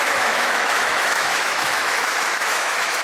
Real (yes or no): no